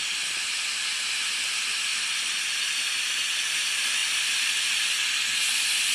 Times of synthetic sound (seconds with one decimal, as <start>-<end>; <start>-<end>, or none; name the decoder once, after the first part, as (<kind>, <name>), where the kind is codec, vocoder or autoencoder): none